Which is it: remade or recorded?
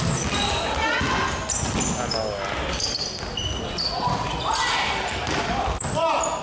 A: recorded